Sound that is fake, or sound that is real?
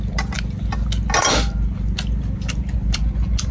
real